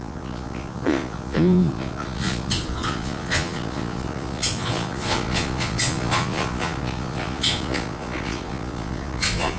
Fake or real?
fake